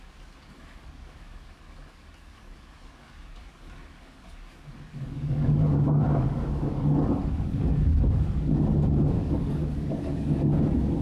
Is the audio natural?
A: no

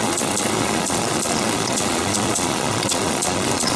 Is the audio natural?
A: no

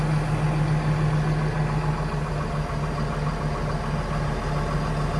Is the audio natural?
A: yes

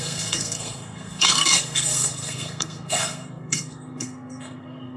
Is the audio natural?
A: no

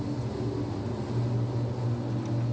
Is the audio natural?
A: yes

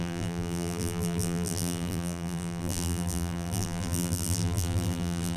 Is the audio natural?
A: no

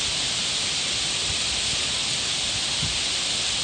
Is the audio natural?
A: yes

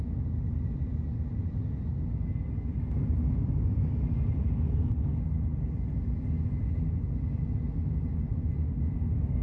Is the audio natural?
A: yes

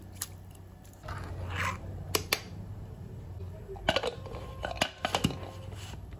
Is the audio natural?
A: yes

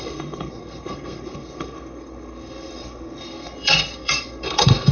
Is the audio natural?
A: no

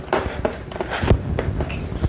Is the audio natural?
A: yes